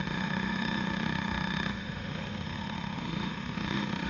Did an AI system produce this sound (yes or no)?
yes